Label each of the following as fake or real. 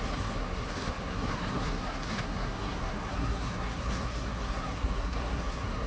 fake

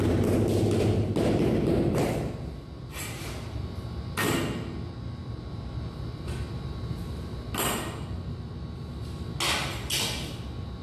real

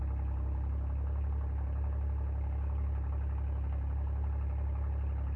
real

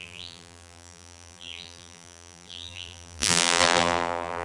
fake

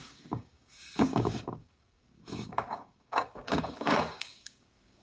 fake